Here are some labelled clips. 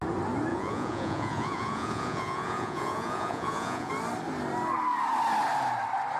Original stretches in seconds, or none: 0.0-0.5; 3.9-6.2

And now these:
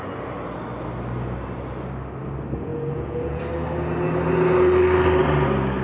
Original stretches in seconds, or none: 0.0-2.7; 3.4-5.8

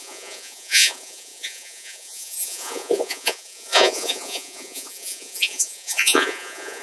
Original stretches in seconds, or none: none

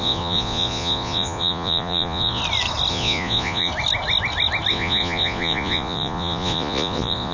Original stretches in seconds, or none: 2.4-2.9; 3.7-4.7

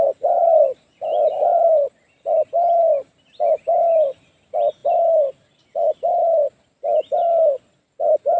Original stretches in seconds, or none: 0.0-8.4

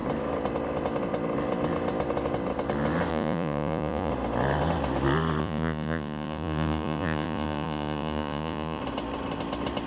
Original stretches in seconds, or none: 0.0-3.1; 4.1-5.4; 8.8-9.9

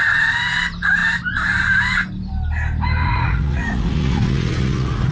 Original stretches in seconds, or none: 0.0-3.0